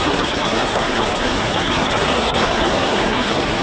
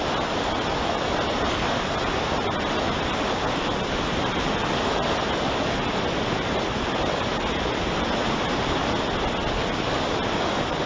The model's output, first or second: first